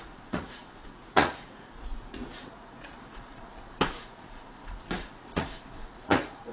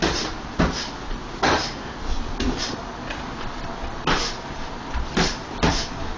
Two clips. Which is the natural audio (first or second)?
second